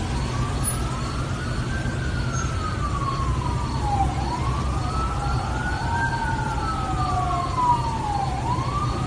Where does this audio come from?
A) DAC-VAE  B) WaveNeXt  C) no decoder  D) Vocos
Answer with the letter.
C